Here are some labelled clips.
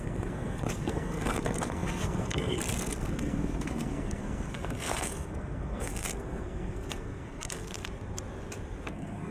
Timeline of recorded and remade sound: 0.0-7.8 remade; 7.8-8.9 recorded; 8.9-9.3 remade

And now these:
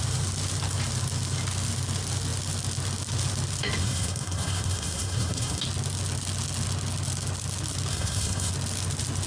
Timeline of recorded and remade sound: 0.0-3.8 recorded; 3.8-5.6 remade; 5.6-7.9 recorded; 7.9-8.5 remade; 8.5-9.3 recorded